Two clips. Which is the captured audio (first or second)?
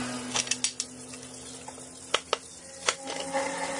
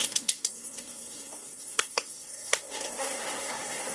first